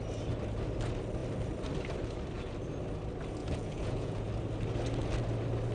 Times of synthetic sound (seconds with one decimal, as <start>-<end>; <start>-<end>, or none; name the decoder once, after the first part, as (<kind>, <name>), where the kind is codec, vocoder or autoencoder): 3.4-4.3 (vocoder, Vocos)